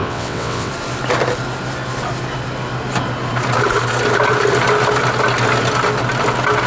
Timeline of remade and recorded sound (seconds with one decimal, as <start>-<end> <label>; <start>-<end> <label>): 0.0-0.7 remade; 0.7-6.7 recorded